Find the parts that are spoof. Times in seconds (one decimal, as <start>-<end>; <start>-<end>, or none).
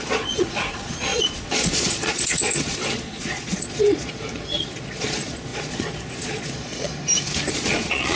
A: 0.0-6.9; 7.5-8.2